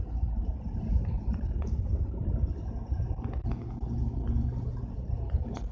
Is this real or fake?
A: real